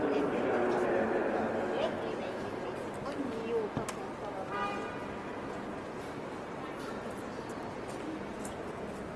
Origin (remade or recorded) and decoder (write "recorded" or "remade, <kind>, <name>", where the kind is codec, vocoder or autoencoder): recorded